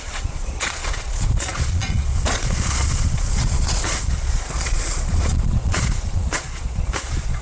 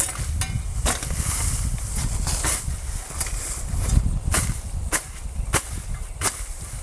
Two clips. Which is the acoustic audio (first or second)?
second